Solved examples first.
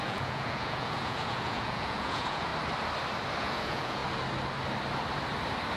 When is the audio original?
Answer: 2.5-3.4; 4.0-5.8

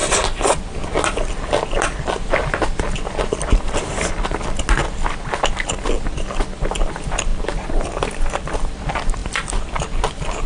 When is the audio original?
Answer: 0.0-10.5

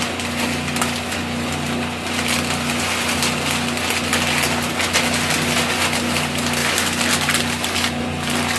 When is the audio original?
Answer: 0.0-8.6

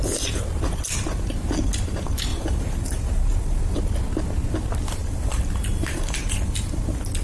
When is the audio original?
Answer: 0.0-2.3; 3.8-5.0; 6.7-7.2